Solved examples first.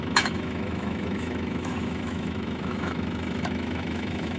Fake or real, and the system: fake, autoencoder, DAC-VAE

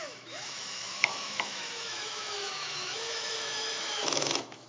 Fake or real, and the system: fake, autoencoder, DAC-VAE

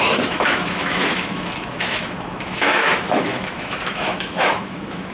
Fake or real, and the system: fake, autoencoder, DAC-VAE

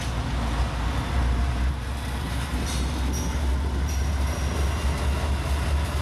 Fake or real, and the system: real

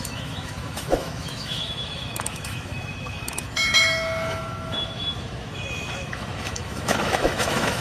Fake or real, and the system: fake, autoencoder, DAC-VAE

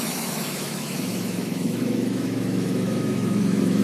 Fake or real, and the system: fake, autoencoder, DAC-VAE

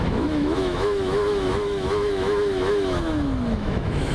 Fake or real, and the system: fake, autoencoder, DAC-VAE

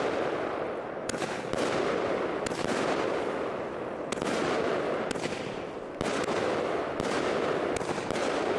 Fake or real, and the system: real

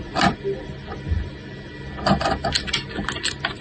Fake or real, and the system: real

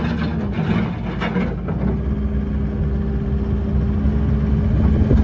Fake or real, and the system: real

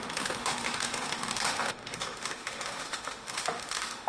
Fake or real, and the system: fake, autoencoder, DAC-VAE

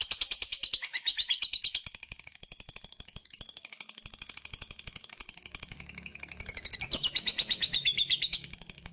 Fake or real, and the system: fake, autoencoder, DAC-VAE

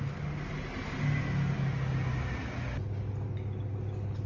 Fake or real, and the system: real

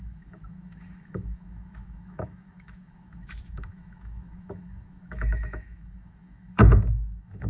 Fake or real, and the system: fake, autoencoder, DAC-VAE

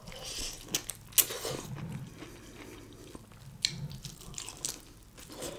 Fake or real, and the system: real